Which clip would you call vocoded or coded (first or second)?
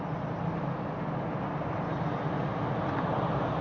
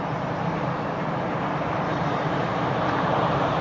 second